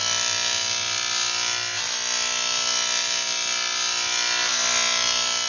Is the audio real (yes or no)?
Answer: yes